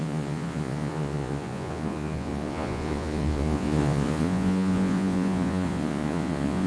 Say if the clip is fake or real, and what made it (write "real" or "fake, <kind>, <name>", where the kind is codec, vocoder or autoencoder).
fake, vocoder, Vocos